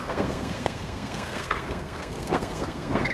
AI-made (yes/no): yes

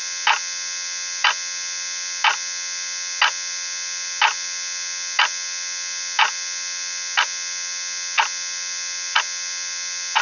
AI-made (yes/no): no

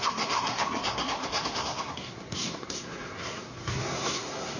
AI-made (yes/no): yes